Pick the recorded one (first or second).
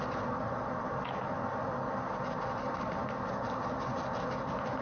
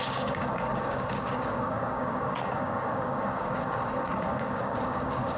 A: first